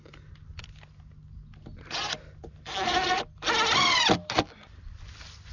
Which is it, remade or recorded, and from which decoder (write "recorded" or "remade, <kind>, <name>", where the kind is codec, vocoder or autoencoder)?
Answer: recorded